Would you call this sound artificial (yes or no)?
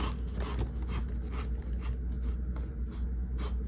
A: no